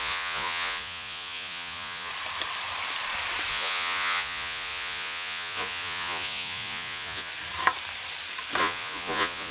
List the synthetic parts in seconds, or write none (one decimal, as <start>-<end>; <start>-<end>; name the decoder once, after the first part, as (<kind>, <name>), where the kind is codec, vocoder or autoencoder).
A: 0.0-2.1 (vocoder, Vocos); 3.5-7.3; 8.6-9.5